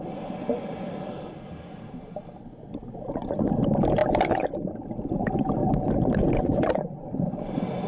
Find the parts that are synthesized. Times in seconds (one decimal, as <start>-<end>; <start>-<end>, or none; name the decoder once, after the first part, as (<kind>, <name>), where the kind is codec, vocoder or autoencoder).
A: 0.0-4.0 (vocoder, BigVGAN v2); 5.1-7.9